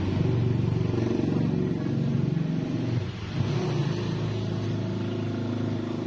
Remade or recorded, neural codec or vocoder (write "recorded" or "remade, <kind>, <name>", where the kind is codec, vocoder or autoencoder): recorded